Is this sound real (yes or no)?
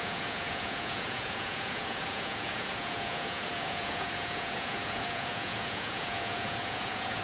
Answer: no